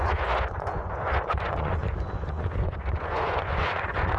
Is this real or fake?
fake